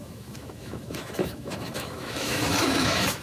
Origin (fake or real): fake